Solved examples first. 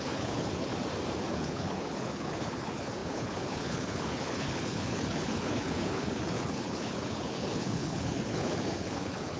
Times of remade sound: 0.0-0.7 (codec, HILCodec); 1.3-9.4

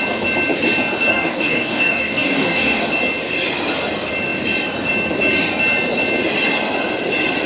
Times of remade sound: 1.1-2.9 (codec, DAC)

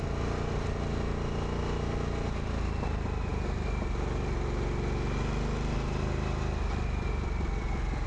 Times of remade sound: none

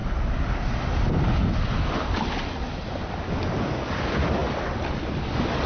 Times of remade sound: none